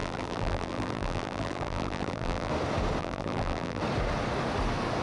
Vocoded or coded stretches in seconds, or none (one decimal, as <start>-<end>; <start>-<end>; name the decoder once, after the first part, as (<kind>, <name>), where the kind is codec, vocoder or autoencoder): 0.0-2.5 (vocoder, BigVGAN v2); 3.0-3.8